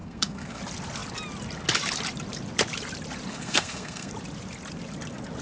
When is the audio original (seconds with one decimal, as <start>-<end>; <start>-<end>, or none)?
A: 0.6-3.3; 4.1-5.4